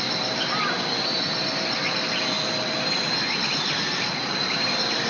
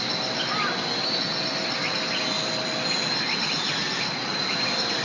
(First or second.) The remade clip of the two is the first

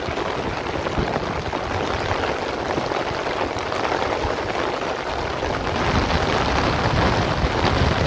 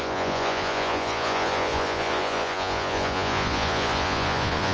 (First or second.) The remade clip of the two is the second